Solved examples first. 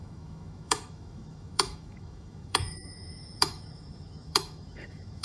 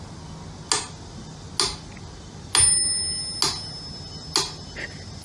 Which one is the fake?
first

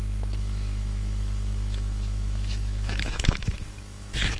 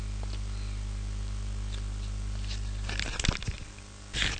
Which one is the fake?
first